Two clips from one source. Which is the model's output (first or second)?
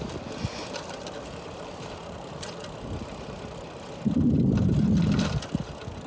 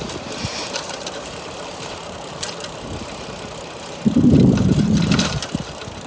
second